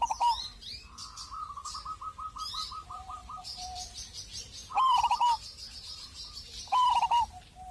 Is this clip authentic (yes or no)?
no